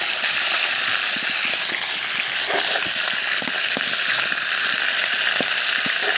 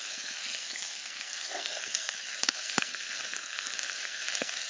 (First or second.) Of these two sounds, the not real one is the second